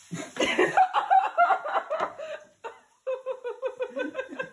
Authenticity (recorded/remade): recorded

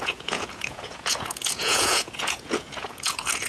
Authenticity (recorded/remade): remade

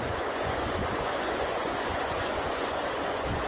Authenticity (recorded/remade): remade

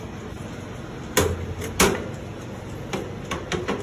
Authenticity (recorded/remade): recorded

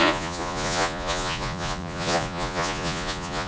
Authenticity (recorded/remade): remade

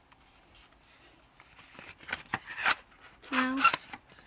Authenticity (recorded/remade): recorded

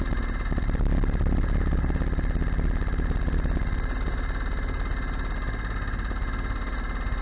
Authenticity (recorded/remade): recorded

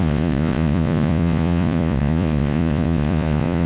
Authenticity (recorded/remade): remade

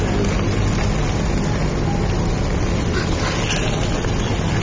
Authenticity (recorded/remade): recorded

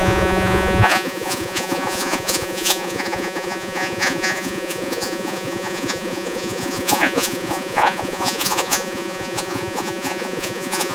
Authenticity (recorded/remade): remade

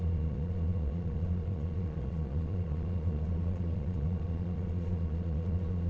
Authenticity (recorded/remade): remade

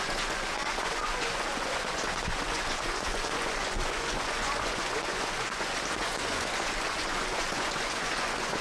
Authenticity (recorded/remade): remade